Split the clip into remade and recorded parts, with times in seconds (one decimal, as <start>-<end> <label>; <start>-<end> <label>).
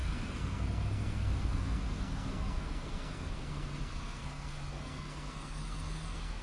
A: 0.0-6.4 remade